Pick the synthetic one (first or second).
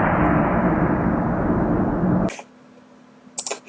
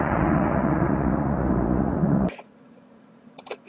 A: second